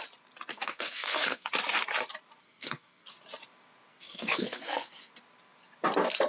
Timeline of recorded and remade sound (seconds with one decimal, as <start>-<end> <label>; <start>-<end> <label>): 0.0-0.5 recorded; 0.5-1.5 remade; 1.5-2.4 recorded; 2.4-3.1 remade; 3.1-3.9 recorded; 3.9-5.1 remade; 5.1-6.3 recorded

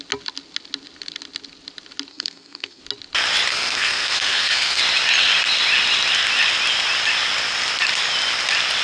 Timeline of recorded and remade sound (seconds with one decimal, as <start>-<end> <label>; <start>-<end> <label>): 0.0-2.1 recorded; 2.1-2.8 remade; 2.8-3.5 recorded; 3.5-4.8 remade; 4.8-8.8 recorded

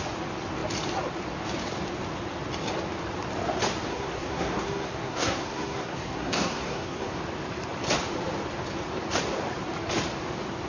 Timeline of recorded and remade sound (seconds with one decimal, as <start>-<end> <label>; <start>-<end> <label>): 0.0-3.9 recorded; 3.9-7.2 remade; 7.2-10.7 recorded

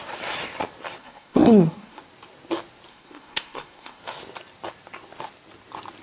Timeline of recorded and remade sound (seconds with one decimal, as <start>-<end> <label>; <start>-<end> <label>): 0.0-1.0 recorded; 1.0-2.0 remade; 2.0-2.9 recorded; 2.9-4.0 remade; 4.0-6.0 recorded

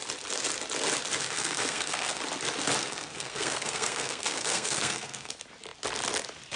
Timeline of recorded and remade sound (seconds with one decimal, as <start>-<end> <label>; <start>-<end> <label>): 0.0-1.2 recorded; 1.2-2.2 remade; 2.2-2.8 recorded; 2.8-5.3 remade; 5.3-6.6 recorded